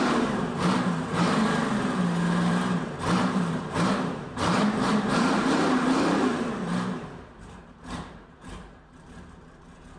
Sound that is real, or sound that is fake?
fake